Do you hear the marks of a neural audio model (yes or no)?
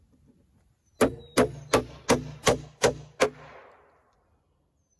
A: no